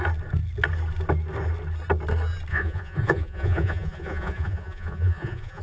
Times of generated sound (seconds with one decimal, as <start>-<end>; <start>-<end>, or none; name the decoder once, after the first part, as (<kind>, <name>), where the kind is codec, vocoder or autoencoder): 2.5-5.6 (vocoder, Vocos)